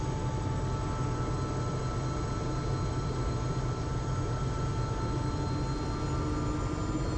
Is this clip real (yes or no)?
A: yes